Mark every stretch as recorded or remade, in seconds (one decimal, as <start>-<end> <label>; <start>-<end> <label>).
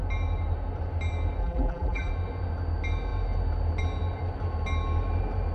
0.0-1.4 recorded; 1.4-2.1 remade; 2.1-5.5 recorded